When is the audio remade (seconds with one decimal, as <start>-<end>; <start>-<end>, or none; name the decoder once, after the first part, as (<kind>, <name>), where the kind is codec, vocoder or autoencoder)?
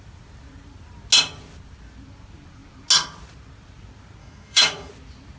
4.2-4.9 (autoencoder, DAC-VAE)